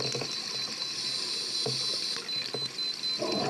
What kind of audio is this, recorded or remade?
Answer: recorded